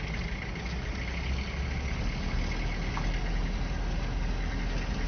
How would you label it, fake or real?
real